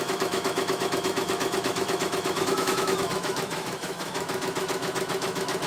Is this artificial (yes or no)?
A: yes